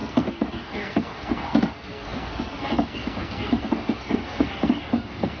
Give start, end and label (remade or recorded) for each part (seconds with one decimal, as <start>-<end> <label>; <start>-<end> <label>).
0.0-5.4 remade